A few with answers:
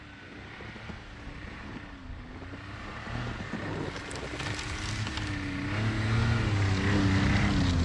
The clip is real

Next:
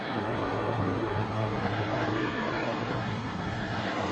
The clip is fake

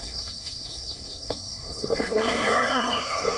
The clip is fake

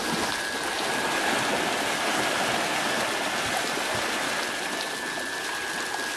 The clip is real